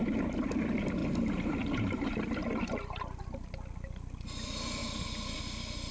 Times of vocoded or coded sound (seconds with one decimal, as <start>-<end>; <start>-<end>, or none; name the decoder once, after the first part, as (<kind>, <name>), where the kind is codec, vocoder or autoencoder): 1.0-3.5 (vocoder, BigVGAN v2)

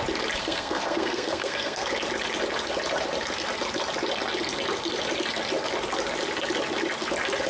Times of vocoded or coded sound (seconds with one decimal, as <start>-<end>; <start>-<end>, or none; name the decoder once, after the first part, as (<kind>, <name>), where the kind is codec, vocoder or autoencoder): 0.4-1.9 (codec, SNAC)

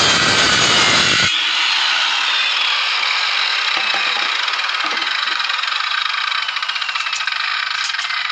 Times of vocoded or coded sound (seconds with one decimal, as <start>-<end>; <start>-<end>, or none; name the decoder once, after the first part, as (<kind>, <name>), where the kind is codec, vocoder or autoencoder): 3.5-6.0 (vocoder, Vocos)

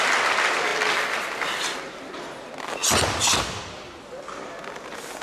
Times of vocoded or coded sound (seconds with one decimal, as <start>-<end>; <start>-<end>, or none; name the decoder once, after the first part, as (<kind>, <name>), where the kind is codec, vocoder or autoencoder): none

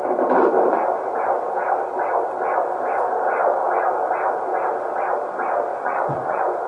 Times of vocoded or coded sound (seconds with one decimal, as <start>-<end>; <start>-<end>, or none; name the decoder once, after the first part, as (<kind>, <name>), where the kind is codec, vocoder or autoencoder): 5.7-6.7 (vocoder, Vocos)

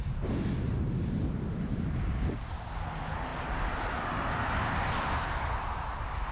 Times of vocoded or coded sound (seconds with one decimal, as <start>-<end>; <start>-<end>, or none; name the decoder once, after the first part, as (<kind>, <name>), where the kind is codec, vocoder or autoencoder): none